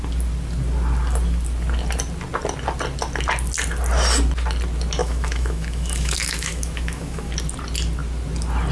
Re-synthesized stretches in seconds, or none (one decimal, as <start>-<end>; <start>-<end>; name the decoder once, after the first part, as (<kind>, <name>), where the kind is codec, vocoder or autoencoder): 5.0-7.3 (autoencoder, DAC-VAE)